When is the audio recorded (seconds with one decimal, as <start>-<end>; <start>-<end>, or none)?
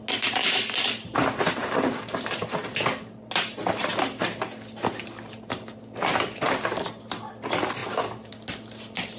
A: 0.0-9.2